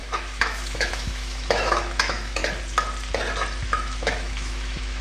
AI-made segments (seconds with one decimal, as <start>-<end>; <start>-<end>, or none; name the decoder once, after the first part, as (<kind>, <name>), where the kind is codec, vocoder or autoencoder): 0.0-2.4 (autoencoder, DAC-VAE); 3.6-5.0